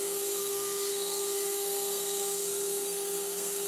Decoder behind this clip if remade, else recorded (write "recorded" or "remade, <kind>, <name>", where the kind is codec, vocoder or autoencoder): remade, codec, SNAC